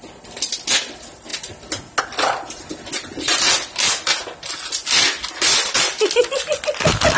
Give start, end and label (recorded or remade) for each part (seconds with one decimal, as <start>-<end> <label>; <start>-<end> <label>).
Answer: 0.0-7.2 recorded